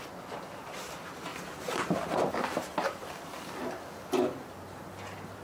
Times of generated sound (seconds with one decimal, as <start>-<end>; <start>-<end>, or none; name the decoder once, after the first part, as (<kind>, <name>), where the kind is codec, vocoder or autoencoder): 1.3-3.6 (vocoder, BigVGAN v2)